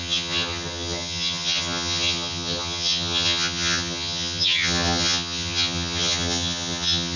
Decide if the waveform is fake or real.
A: fake